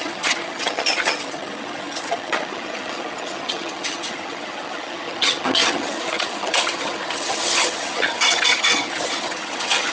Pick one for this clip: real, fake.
fake